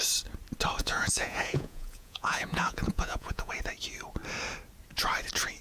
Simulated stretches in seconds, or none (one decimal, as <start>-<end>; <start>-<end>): 0.8-3.5